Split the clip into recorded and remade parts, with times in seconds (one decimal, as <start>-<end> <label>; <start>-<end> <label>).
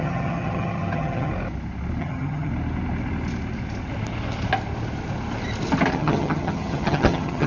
0.0-1.3 remade; 1.3-2.0 recorded; 2.0-2.5 remade; 2.5-5.9 recorded; 5.9-7.5 remade